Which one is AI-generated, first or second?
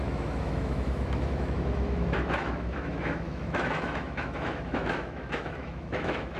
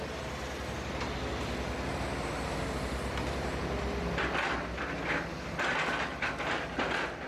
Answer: first